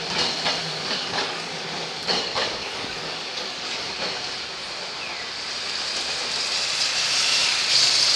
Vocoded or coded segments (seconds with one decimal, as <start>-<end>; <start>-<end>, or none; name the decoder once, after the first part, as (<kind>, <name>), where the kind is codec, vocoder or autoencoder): 0.6-3.9 (codec, DAC)